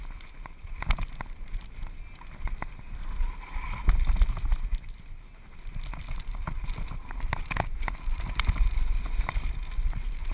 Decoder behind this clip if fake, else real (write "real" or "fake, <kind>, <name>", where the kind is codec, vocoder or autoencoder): real